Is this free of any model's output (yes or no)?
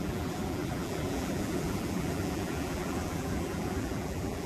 no